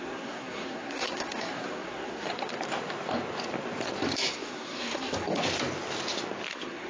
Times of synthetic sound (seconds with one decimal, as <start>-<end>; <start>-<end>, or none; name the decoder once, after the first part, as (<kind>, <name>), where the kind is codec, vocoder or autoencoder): 0.0-2.3 (codec, SNAC); 4.3-5.4; 6.5-6.9